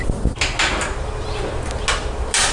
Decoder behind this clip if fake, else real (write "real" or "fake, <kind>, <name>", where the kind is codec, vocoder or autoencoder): real